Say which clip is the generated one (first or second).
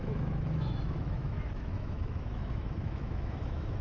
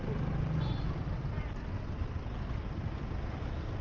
first